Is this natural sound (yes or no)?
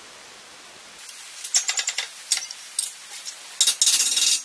yes